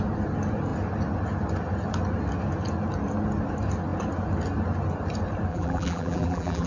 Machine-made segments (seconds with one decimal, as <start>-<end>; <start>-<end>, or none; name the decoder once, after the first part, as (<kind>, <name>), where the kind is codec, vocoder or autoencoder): 5.5-6.7 (vocoder, BigVGAN v2)